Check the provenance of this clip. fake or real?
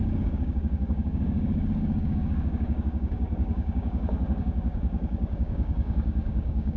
fake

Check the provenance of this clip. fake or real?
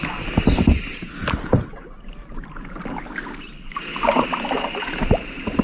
real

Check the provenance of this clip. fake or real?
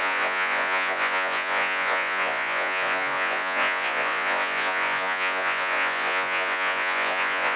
fake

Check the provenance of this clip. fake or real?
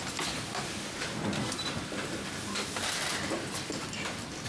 real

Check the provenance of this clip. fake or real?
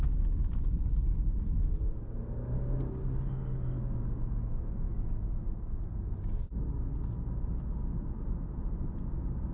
real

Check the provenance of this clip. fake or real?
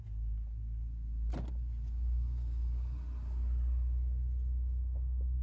real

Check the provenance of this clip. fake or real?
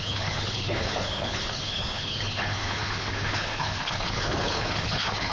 fake